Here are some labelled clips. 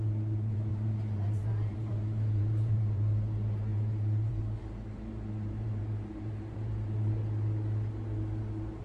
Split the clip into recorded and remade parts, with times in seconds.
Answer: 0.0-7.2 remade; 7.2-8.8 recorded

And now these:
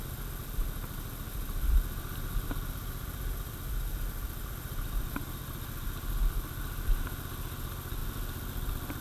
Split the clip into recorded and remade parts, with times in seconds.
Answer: 0.0-9.0 recorded

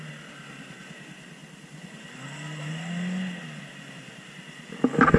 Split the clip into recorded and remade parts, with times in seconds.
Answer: 0.0-5.2 recorded

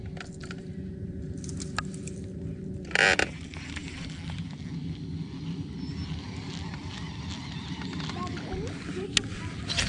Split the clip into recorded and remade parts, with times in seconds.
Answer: 0.0-0.4 recorded; 0.4-1.5 remade; 1.5-9.9 recorded

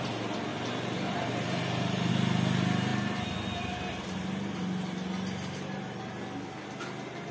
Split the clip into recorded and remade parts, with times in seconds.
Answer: 0.0-0.5 recorded; 0.5-2.1 remade; 2.1-7.3 recorded